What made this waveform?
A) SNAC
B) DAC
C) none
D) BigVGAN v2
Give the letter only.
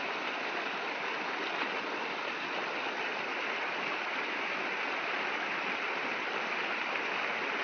C